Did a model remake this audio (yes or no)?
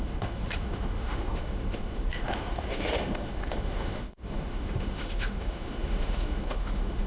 yes